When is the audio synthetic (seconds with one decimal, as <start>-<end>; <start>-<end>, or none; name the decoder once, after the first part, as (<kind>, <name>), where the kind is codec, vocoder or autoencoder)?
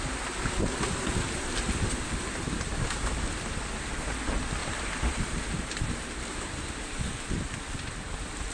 4.6-7.0 (vocoder, BigVGAN v2)